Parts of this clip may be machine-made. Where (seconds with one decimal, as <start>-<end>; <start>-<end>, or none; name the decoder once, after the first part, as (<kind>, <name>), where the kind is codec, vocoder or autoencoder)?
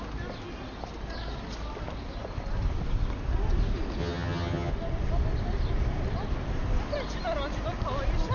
4.0-4.7 (vocoder, HiFi-GAN)